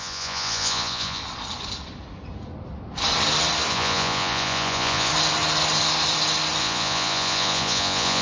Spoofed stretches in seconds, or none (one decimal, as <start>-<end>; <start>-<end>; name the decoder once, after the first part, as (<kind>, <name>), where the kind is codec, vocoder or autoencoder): 0.0-1.2 (vocoder, Vocos); 3.7-5.1; 6.6-8.2